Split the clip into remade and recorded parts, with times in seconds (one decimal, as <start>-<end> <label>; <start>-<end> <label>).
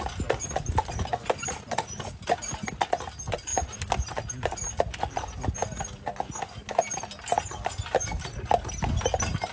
0.0-9.5 recorded